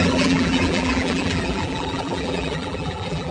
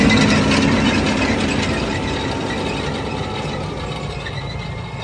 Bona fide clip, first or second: second